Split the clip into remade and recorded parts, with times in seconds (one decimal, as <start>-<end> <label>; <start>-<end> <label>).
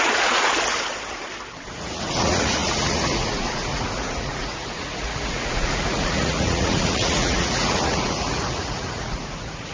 0.0-0.5 remade; 0.5-1.7 recorded; 1.7-9.7 remade